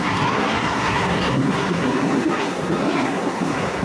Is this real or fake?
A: fake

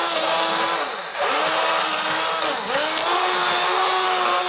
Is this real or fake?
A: real